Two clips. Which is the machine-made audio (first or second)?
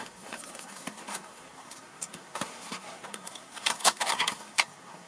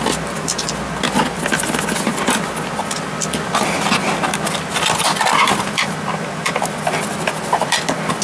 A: first